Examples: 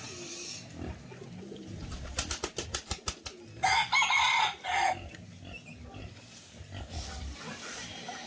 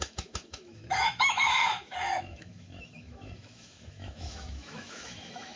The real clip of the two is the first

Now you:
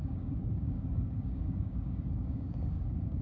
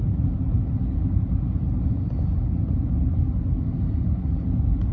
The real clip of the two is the second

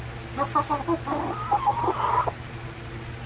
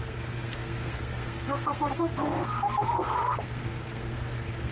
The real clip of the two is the first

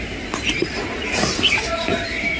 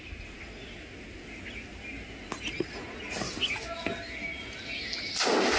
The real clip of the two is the second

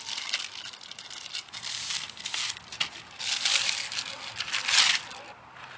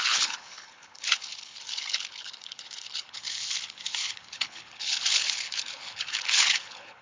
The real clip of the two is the first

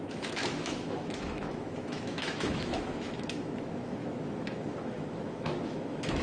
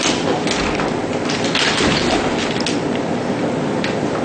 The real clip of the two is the second